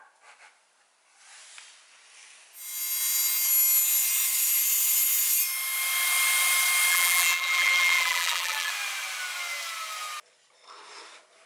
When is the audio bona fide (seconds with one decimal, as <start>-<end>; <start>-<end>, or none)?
0.0-6.9; 8.7-11.5